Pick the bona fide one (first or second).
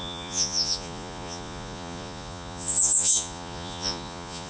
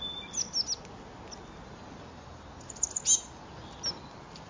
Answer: second